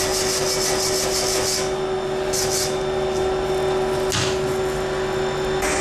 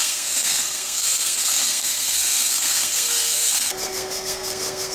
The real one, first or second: first